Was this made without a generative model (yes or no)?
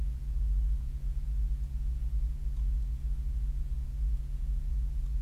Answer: no